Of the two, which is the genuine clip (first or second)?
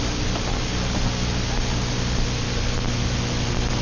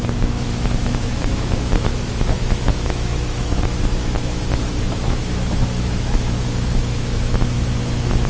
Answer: first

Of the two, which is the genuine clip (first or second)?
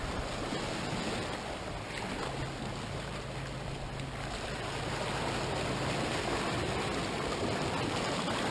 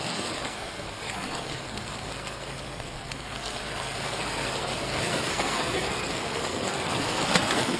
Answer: first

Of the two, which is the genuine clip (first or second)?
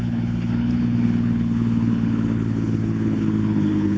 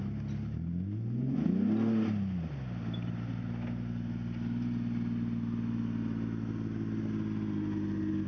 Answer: second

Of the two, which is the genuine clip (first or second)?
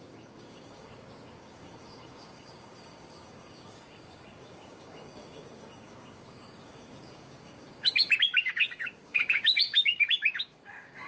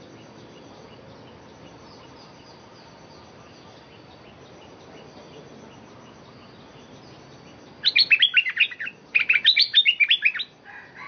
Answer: second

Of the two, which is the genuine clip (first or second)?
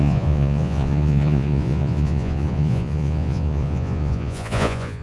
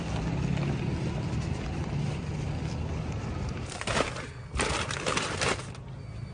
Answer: second